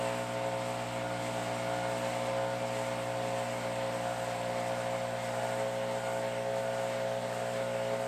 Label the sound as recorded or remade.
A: recorded